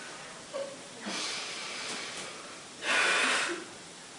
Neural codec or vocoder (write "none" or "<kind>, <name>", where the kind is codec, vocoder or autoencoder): none